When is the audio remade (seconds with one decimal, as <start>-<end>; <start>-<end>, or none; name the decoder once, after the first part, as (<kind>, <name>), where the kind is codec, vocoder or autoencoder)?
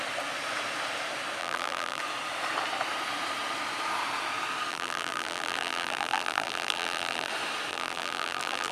1.4-2.0 (vocoder, BigVGAN v2); 4.7-7.3; 7.7-8.7